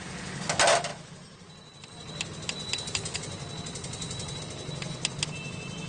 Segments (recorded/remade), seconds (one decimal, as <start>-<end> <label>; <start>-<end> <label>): 0.0-5.9 recorded